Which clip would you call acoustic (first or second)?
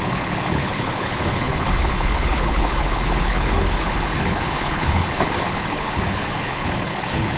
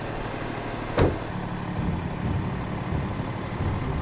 second